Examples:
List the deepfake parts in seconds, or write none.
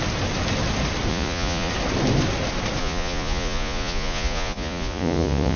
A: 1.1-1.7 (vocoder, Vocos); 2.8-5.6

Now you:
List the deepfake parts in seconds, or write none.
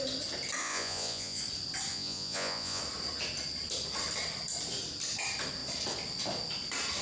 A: 0.6-1.4 (vocoder, Vocos); 1.9-2.8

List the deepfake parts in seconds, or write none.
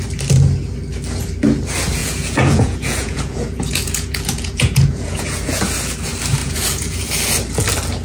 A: 2.0-5.6 (vocoder, Vocos); 6.4-7.1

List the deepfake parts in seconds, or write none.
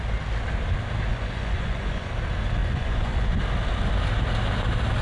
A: 1.1-2.1 (vocoder, Vocos); 2.6-3.4